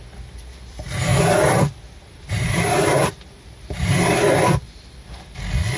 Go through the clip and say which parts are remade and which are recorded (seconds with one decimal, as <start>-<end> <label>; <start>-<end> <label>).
0.0-1.1 recorded; 1.1-3.9 remade; 3.9-5.8 recorded